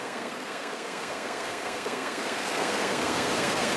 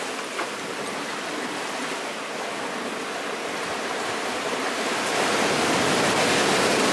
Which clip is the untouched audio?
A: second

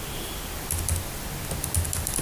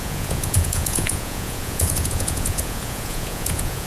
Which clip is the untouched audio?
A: first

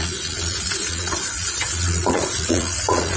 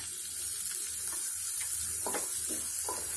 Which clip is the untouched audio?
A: second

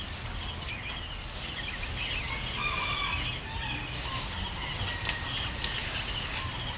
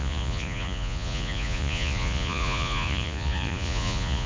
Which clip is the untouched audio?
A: first